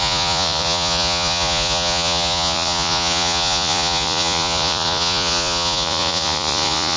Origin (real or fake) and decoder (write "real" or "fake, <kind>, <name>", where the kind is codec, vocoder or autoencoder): fake, vocoder, Vocos